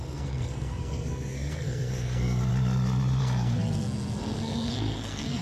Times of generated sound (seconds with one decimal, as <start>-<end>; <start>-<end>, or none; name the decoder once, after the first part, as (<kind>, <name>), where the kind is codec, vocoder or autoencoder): 0.0-2.5 (codec, SNAC); 3.2-5.4